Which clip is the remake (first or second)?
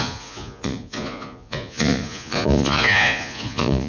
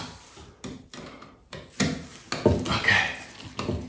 first